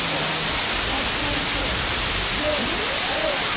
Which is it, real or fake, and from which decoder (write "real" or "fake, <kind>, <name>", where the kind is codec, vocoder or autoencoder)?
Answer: real